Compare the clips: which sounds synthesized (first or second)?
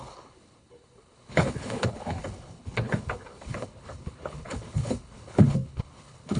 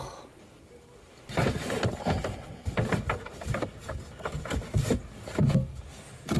first